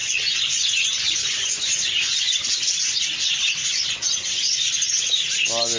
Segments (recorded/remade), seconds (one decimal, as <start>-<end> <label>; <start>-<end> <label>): 0.0-2.5 remade; 2.5-3.6 recorded; 3.6-4.9 remade; 4.9-5.8 recorded